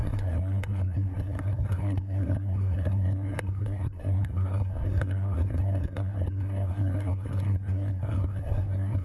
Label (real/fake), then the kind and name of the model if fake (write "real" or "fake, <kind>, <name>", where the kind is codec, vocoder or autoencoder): fake, codec, SNAC